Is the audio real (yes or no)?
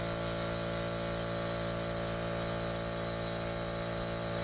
yes